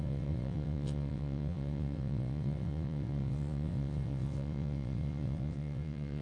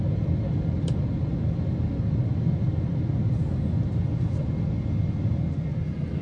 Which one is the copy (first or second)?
first